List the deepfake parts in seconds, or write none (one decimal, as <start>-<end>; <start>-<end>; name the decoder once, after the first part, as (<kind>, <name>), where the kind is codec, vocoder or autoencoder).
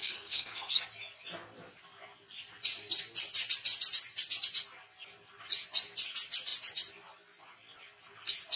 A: 0.0-0.8 (codec, SNAC)